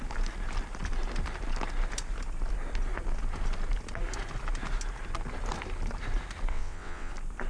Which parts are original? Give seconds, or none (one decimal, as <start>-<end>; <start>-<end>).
0.0-6.5; 7.1-7.5